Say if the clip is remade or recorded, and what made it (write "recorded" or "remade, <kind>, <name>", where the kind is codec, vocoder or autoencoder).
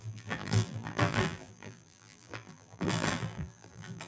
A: remade, vocoder, BigVGAN v2